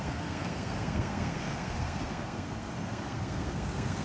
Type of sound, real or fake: fake